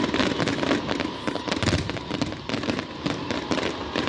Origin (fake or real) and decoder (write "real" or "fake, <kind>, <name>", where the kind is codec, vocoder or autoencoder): real